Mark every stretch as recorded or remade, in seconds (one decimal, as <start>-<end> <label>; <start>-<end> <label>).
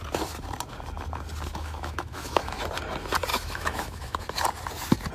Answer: 0.0-1.5 recorded; 1.5-2.6 remade; 2.6-3.3 recorded; 3.3-4.2 remade; 4.2-5.1 recorded